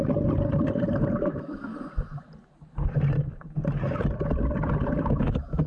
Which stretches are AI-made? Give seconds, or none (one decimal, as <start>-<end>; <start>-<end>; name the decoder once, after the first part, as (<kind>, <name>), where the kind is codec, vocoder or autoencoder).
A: 1.2-1.7 (autoencoder, DAC-VAE); 5.1-5.7